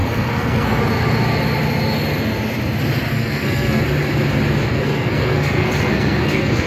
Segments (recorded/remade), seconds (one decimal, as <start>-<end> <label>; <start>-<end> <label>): 0.0-0.8 remade; 0.8-3.1 recorded; 3.1-3.8 remade; 3.8-4.7 recorded; 4.7-6.7 remade